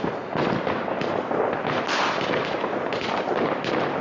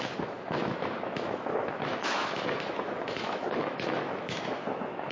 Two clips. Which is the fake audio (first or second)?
second